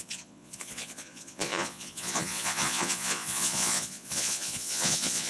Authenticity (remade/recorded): remade